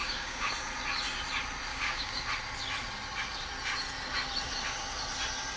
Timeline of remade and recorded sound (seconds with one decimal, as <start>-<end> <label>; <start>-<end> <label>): 0.0-0.5 remade; 0.5-1.7 recorded; 1.7-2.2 remade; 2.2-5.6 recorded